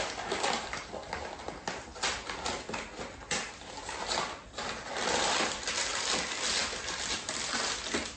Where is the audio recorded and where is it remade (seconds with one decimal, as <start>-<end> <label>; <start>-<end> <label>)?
0.0-8.2 recorded